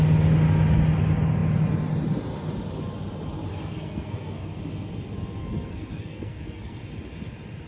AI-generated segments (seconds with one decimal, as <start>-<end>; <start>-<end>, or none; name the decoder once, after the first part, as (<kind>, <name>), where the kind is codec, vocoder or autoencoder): 3.5-4.6 (codec, SNAC); 5.4-6.8